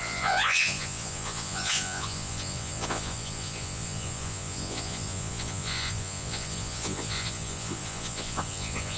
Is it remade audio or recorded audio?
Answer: remade